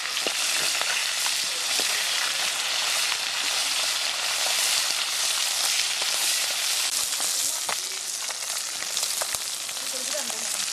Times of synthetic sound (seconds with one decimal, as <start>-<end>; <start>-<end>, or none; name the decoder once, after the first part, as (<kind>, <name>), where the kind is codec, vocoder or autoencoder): 1.0-2.4 (vocoder, BigVGAN v2); 3.6-4.7; 6.2-6.9